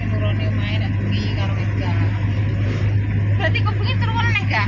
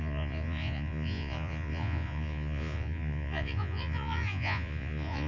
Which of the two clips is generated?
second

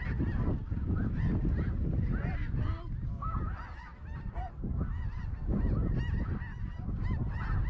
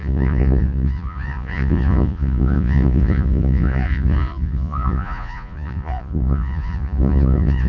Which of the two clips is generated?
second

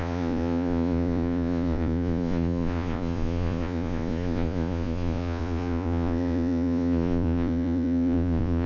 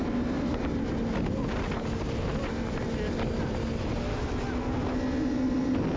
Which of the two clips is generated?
first